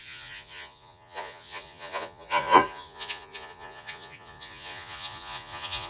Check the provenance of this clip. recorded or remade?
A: remade